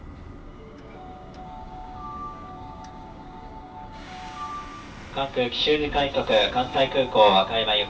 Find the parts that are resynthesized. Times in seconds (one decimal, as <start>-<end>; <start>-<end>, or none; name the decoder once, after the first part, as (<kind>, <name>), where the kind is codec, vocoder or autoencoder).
0.4-4.5 (codec, DAC); 5.3-6.8